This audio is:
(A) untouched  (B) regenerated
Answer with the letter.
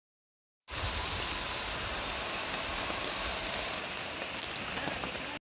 A